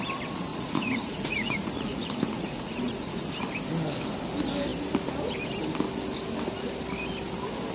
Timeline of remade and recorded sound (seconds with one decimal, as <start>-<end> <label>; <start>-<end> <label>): 0.0-0.5 recorded; 0.5-3.3 remade; 3.3-7.7 recorded